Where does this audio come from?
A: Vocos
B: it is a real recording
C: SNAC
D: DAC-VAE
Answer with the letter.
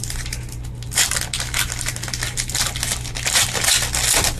B